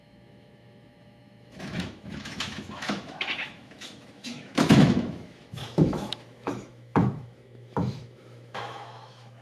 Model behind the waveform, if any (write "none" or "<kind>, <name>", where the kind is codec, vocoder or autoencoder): autoencoder, DAC-VAE